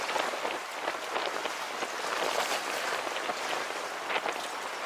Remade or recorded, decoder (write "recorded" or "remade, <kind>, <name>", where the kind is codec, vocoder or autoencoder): recorded